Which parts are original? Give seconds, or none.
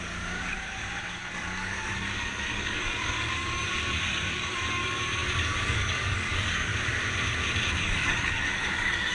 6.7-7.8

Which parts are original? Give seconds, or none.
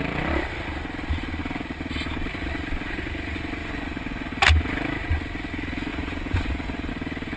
0.0-3.6; 4.3-5.9; 6.9-7.4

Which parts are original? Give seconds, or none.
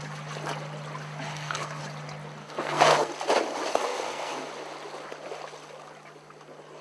0.0-1.3; 1.8-2.4; 3.1-3.7; 4.5-6.8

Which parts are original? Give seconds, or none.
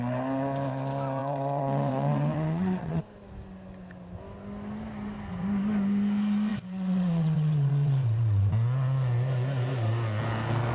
0.0-1.2; 3.0-6.5; 8.5-10.7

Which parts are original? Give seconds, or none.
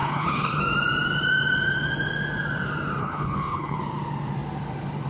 0.6-3.0; 3.8-5.1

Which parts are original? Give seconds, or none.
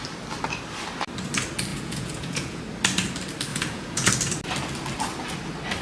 0.0-1.7; 2.6-3.5; 4.1-5.8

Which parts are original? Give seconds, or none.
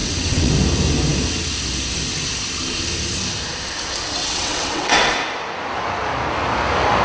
0.5-4.2; 5.1-7.0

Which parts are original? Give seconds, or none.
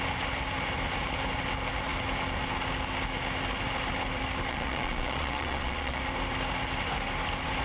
0.0-4.5; 6.0-7.6